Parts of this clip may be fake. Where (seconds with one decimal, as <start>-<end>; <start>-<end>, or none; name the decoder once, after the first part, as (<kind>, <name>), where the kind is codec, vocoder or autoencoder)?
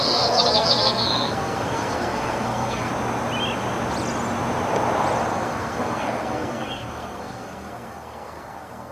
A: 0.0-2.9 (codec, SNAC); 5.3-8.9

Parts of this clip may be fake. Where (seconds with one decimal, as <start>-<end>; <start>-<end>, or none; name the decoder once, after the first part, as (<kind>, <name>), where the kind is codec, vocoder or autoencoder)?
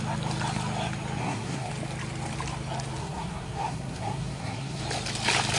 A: 1.2-1.7 (codec, SNAC); 3.0-4.8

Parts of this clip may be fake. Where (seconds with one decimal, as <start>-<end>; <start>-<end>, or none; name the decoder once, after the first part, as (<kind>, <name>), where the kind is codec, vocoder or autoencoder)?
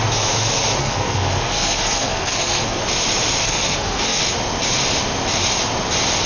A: 0.8-2.8 (codec, SNAC); 3.4-4.2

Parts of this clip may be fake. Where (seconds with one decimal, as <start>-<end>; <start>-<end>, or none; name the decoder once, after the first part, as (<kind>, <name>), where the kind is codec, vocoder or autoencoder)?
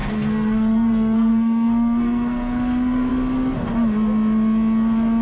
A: 0.0-3.1 (codec, SNAC)